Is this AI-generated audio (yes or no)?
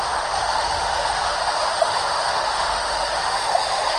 yes